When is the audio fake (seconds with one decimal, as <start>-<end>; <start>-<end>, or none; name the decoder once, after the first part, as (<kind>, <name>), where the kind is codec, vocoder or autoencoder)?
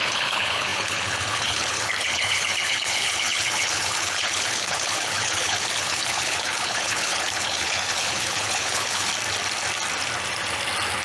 0.0-9.1 (codec, HILCodec)